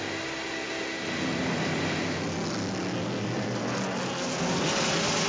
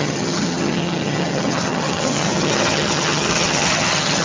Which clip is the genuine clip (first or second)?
first